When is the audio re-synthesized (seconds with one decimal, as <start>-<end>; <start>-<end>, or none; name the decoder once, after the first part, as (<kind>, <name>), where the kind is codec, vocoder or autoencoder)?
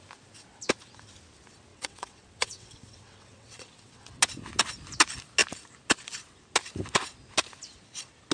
1.7-4.2 (vocoder, WaveNeXt)